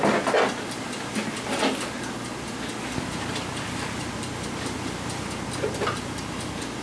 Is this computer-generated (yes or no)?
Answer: no